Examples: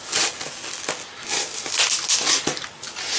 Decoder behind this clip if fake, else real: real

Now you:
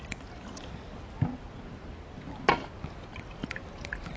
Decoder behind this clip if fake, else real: real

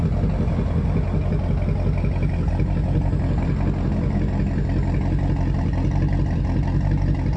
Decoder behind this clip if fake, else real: real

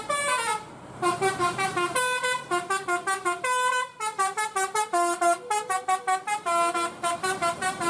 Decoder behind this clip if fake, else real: real